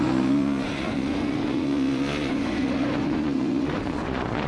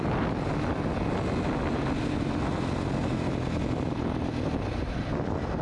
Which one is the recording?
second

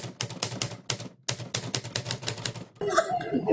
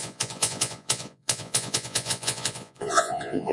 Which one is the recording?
first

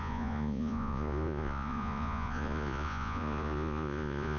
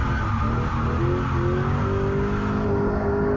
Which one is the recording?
second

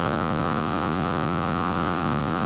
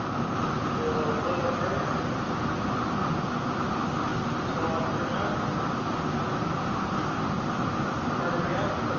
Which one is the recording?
second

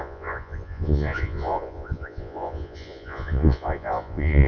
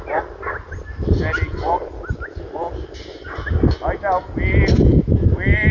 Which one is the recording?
second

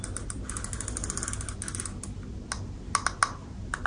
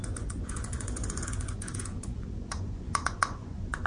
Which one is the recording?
first